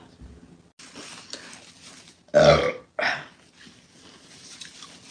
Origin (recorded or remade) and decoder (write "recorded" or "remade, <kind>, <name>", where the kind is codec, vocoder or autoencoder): recorded